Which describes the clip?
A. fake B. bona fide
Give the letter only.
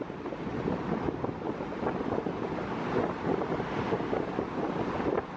B